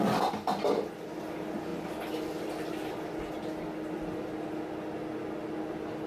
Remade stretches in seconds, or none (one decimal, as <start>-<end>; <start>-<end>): none